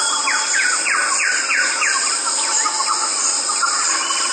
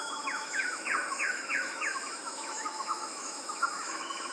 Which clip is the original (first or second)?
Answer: first